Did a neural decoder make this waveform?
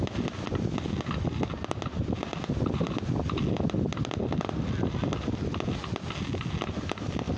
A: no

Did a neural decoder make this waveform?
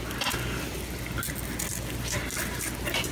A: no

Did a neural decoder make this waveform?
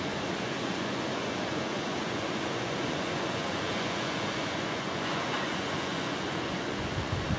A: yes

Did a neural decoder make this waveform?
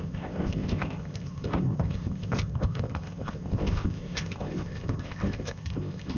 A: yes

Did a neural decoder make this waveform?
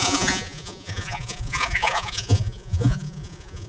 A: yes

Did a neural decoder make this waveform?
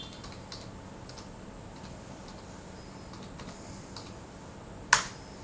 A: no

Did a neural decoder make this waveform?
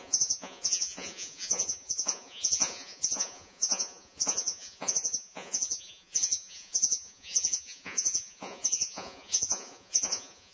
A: yes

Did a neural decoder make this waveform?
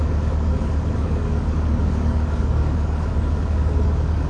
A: yes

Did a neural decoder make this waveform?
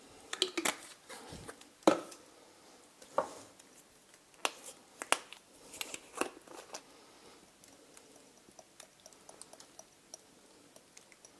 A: no